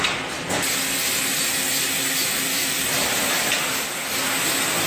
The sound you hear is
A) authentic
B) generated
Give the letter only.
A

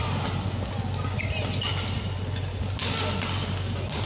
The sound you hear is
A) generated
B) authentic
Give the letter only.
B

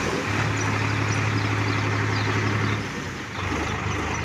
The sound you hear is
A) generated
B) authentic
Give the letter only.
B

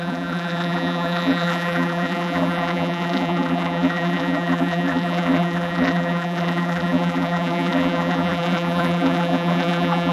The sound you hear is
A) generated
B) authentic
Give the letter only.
A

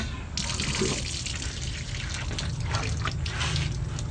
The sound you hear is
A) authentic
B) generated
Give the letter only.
A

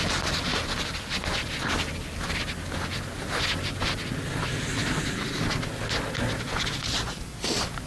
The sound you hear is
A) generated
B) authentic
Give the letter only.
B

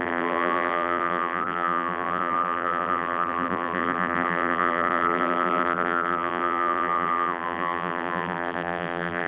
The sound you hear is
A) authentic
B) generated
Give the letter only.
B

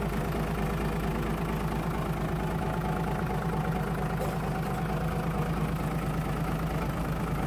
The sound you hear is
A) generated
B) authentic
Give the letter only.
B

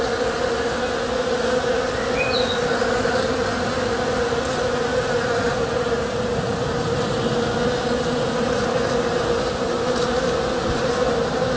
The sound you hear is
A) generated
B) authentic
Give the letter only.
B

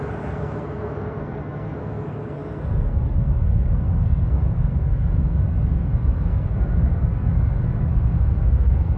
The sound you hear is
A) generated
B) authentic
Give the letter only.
A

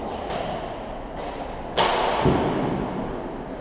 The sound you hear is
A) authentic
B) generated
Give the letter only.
A